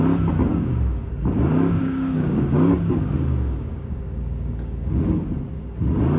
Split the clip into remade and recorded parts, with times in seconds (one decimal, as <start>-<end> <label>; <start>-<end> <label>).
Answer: 0.0-0.5 recorded; 0.5-1.1 remade; 1.1-1.5 recorded; 1.5-4.9 remade; 4.9-6.2 recorded